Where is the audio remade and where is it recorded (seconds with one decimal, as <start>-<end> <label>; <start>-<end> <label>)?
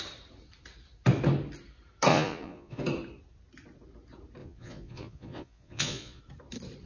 0.0-2.1 recorded; 2.1-2.8 remade; 2.8-4.4 recorded; 4.4-6.2 remade; 6.2-6.9 recorded